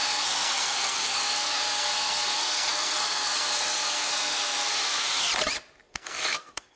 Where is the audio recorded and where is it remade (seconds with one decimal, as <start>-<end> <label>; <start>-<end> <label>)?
0.0-5.3 remade; 5.3-5.9 recorded; 5.9-6.8 remade